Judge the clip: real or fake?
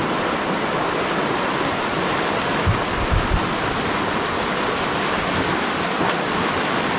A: real